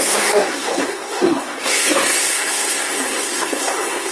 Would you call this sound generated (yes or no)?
yes